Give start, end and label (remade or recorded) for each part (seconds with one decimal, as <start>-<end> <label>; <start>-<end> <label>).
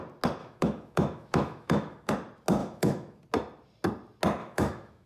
0.0-0.4 recorded; 0.4-2.1 remade; 2.1-2.6 recorded; 2.6-3.2 remade; 3.2-4.4 recorded; 4.4-5.1 remade